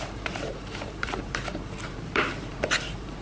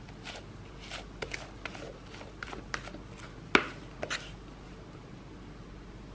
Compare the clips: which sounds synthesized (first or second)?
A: first